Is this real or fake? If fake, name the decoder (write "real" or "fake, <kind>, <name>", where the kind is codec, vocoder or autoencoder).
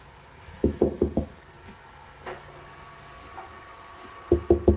real